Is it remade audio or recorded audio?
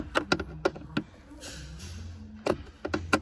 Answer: recorded